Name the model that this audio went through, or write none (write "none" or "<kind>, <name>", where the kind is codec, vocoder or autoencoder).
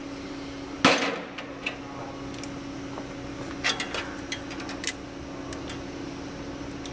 none